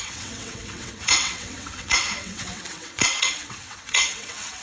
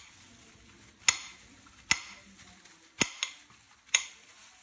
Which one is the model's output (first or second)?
first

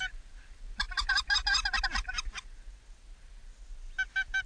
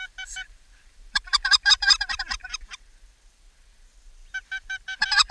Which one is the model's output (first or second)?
second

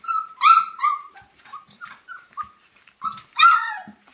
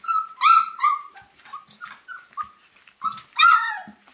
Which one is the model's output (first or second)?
first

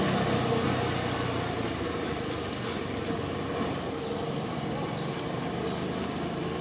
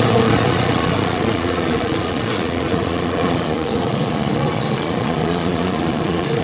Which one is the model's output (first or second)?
second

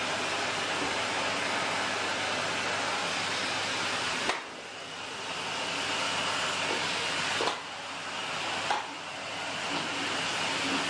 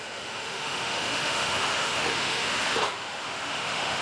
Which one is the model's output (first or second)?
second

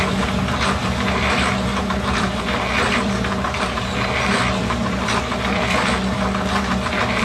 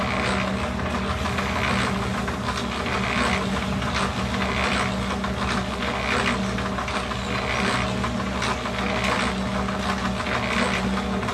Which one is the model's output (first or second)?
first